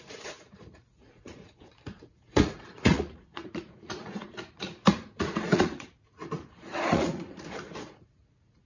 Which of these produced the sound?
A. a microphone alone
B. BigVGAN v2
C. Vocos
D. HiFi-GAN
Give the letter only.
C